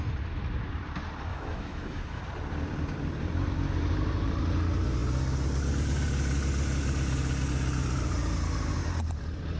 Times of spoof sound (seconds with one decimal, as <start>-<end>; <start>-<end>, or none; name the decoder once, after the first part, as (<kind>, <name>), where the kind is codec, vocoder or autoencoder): 1.3-2.2 (autoencoder, DAC-VAE)